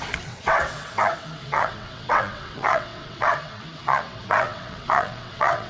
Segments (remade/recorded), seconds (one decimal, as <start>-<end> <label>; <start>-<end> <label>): 0.0-5.7 remade